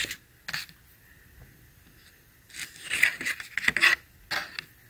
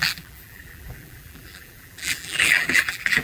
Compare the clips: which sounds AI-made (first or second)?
second